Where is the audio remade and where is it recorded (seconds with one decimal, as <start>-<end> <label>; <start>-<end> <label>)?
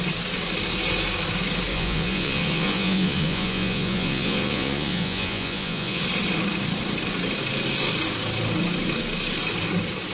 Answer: 0.0-1.7 recorded; 1.7-6.0 remade; 6.0-10.1 recorded